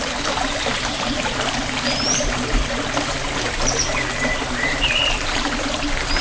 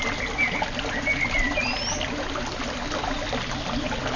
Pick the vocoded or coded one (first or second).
first